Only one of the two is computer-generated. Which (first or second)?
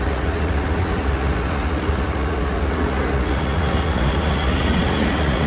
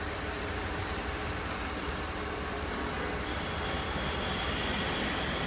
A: first